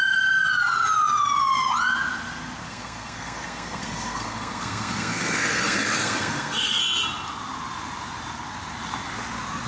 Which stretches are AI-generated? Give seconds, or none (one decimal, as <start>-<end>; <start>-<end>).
2.6-6.8